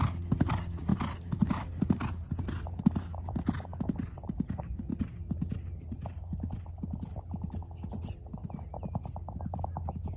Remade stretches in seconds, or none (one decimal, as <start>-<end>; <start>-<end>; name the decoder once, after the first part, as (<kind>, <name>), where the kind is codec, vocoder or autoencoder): none